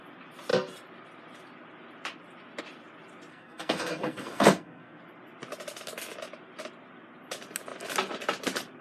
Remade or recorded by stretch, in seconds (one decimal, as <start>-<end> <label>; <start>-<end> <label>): 0.0-3.3 recorded; 3.3-5.0 remade; 5.0-8.8 recorded